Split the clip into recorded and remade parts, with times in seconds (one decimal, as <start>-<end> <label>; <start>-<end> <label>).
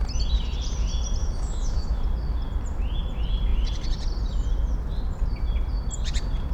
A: 0.0-1.2 recorded; 1.2-2.0 remade; 2.0-6.5 recorded